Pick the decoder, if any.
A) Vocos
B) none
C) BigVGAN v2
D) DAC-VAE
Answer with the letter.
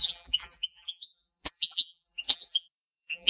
C